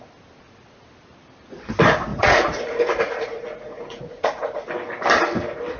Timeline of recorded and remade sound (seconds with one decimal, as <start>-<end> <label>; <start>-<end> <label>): 0.0-2.1 recorded; 2.1-4.7 remade; 4.7-5.8 recorded